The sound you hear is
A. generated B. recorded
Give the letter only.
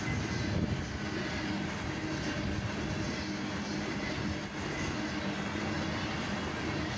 B